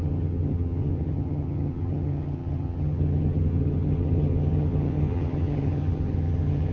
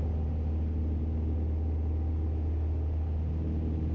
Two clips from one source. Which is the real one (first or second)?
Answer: second